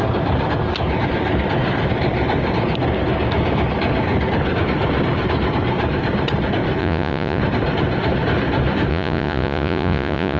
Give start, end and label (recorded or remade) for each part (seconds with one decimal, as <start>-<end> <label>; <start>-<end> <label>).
0.0-6.8 recorded; 6.8-7.4 remade; 7.4-8.9 recorded; 8.9-10.4 remade